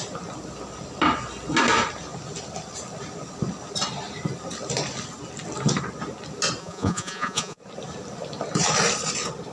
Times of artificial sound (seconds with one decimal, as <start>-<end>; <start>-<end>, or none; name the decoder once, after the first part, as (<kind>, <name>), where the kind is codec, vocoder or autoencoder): 6.6-7.6 (vocoder, Vocos)